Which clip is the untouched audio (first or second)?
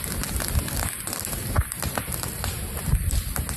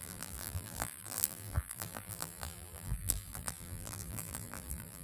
first